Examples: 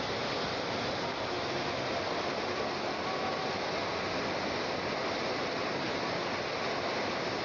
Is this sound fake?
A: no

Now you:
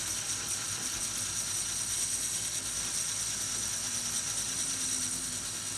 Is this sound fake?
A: no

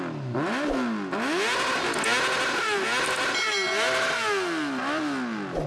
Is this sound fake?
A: no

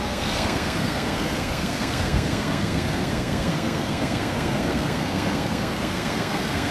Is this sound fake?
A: yes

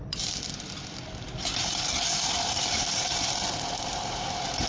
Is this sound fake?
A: no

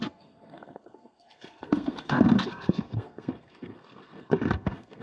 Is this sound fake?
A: yes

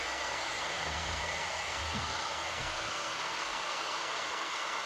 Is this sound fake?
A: yes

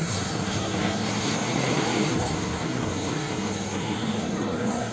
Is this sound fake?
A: yes